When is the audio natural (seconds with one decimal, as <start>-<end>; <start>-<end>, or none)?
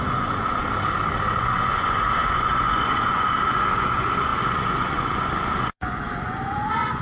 0.6-1.4